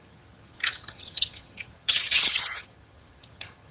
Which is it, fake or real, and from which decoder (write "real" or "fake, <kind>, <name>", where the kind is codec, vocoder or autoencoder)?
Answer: fake, vocoder, HiFi-GAN